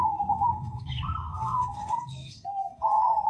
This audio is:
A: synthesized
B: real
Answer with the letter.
A